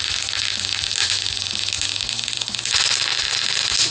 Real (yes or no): yes